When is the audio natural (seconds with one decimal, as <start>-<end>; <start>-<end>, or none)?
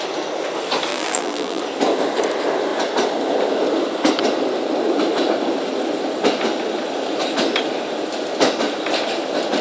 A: 0.0-0.9; 1.6-9.6